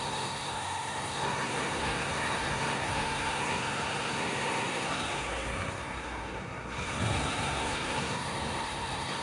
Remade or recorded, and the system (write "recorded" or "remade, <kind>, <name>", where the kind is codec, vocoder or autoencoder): remade, codec, SNAC